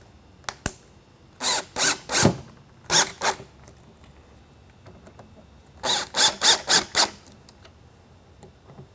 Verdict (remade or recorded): recorded